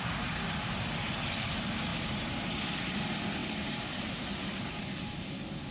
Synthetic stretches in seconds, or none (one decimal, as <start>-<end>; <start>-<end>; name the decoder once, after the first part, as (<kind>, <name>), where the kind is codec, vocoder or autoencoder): 1.9-2.6 (vocoder, BigVGAN v2); 3.4-4.8